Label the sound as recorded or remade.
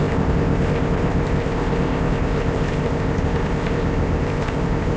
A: remade